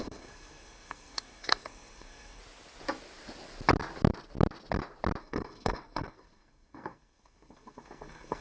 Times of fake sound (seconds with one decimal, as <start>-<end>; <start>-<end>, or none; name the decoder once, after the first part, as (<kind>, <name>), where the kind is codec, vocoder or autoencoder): 0.0-2.4 (codec, SNAC); 5.2-8.4